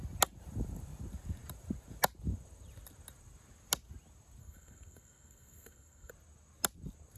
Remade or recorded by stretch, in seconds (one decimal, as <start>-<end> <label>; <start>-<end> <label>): 0.0-4.4 recorded; 4.4-6.1 remade; 6.1-7.2 recorded